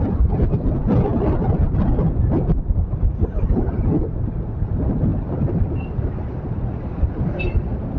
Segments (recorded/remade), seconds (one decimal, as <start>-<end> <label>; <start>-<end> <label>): 0.0-8.0 recorded